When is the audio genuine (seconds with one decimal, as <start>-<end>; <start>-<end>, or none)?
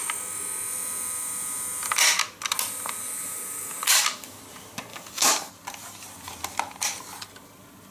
0.0-3.0; 4.4-4.9; 5.5-7.9